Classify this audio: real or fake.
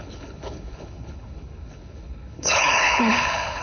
fake